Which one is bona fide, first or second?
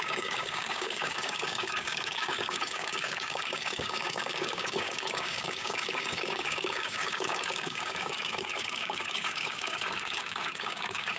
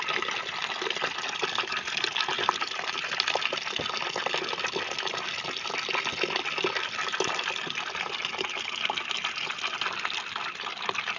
second